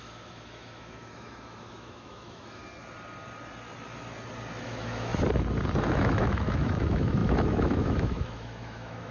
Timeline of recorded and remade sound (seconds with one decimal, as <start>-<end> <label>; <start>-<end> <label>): 0.0-2.6 remade; 2.6-4.6 recorded; 4.6-5.1 remade; 5.1-5.8 recorded; 5.8-9.1 remade